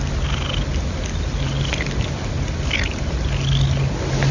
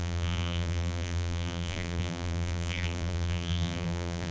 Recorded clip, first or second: first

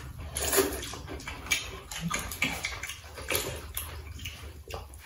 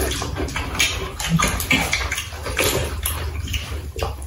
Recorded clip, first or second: second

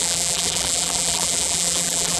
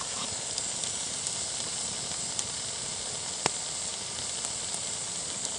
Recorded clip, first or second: second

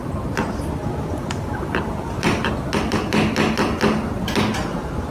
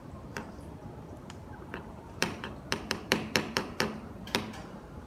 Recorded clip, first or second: first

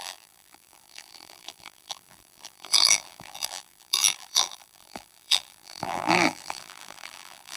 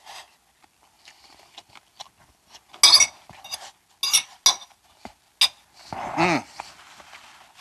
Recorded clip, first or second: second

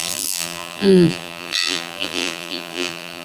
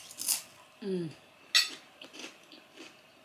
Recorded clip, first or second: second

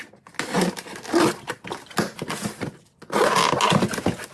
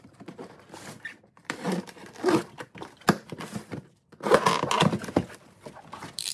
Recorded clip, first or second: first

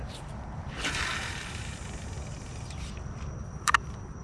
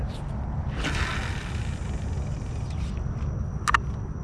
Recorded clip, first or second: second